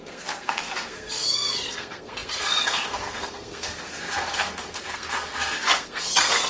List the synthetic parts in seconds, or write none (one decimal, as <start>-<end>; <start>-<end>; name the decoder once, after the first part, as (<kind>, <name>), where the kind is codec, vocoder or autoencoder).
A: 0.0-6.5 (codec, SNAC)